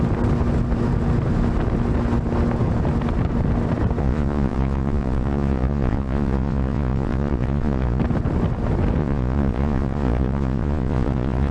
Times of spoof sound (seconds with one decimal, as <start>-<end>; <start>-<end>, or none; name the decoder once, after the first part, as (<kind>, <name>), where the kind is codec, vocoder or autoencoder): 4.0-8.0 (vocoder, Vocos); 9.0-11.5